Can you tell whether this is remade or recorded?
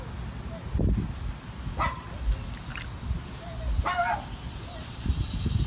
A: recorded